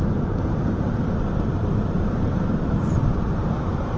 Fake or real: fake